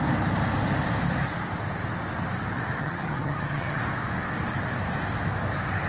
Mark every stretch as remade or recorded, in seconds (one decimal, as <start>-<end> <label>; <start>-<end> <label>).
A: 0.0-2.8 recorded; 2.8-3.8 remade; 3.8-5.9 recorded